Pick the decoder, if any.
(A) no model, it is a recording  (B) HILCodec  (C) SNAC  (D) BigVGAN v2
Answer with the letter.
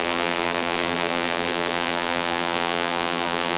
D